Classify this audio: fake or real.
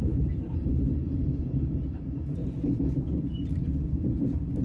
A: fake